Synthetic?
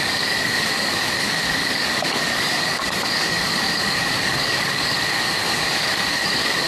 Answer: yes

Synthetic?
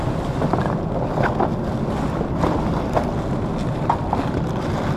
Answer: no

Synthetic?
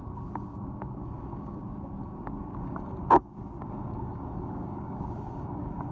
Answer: yes